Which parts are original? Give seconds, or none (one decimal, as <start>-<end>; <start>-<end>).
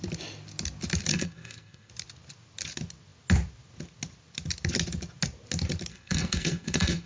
0.0-1.1; 1.9-5.9